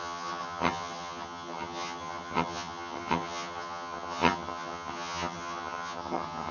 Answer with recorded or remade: remade